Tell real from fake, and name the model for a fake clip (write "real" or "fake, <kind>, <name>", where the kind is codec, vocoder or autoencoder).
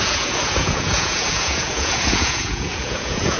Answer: fake, vocoder, Vocos